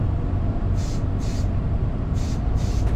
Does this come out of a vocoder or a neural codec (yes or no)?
yes